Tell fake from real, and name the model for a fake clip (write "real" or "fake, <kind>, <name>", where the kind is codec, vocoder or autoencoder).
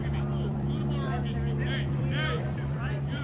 fake, vocoder, BigVGAN v2